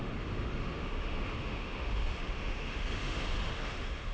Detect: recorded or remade remade